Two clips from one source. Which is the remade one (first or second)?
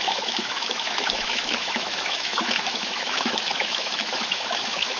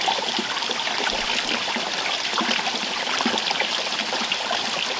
first